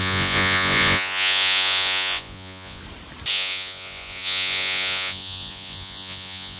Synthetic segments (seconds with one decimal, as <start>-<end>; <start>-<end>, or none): 0.0-2.8; 3.3-6.6